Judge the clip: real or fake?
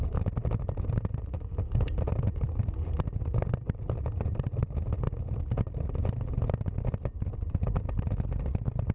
real